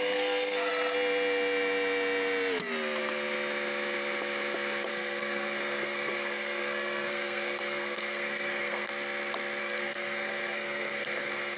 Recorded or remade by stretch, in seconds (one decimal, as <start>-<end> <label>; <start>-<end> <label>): 0.0-0.7 remade; 0.7-4.9 recorded; 4.9-8.9 remade; 8.9-9.6 recorded; 9.6-11.6 remade